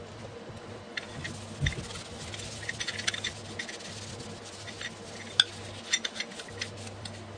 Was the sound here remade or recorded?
recorded